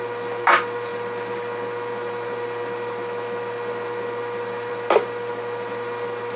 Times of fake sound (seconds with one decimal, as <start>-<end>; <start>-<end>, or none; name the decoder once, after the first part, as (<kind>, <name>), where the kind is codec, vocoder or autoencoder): none